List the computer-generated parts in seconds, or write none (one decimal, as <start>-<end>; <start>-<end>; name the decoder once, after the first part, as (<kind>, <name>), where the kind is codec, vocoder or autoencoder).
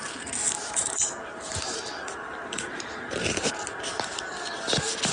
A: 0.4-3.5 (vocoder, BigVGAN v2)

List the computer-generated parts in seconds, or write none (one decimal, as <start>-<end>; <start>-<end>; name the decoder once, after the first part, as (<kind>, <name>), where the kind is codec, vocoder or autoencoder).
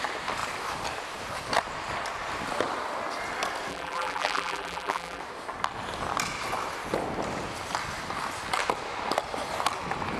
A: 3.7-5.2 (vocoder, BigVGAN v2)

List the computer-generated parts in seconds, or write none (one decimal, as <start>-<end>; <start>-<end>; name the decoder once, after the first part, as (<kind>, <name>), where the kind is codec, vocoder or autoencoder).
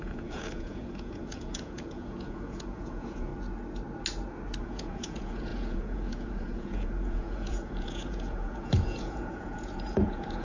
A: 0.0-3.3 (vocoder, Vocos); 4.6-10.4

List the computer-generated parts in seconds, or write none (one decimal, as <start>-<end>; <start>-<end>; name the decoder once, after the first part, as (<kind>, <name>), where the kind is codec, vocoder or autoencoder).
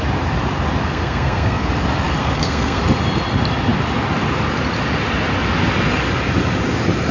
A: 0.8-1.7 (codec, SNAC); 2.2-2.8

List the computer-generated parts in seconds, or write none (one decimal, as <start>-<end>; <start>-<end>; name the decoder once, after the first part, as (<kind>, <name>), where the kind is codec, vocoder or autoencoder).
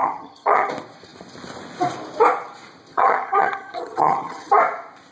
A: 0.0-0.7 (vocoder, HiFi-GAN); 2.9-4.5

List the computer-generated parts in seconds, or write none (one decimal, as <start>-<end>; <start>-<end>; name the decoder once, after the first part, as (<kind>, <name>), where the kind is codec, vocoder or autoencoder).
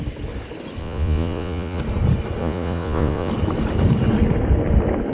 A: 0.8-1.8 (vocoder, Vocos); 2.4-3.3